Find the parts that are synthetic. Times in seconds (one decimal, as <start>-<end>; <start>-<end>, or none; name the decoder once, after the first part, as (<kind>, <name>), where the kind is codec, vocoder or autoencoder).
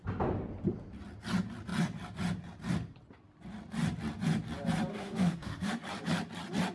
4.9-5.7 (codec, SNAC)